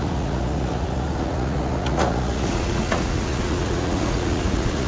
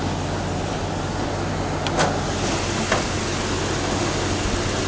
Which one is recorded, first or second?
second